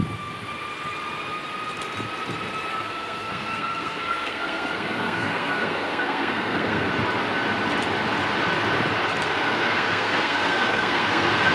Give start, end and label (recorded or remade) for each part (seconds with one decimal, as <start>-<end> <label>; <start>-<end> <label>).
0.0-2.7 recorded; 2.7-6.9 remade; 6.9-9.2 recorded; 9.2-11.5 remade